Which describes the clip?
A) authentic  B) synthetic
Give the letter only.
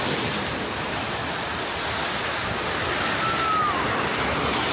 A